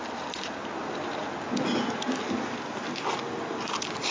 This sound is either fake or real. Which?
real